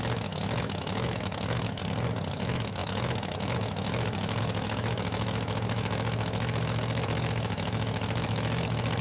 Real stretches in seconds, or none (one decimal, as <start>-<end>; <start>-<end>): 1.8-2.3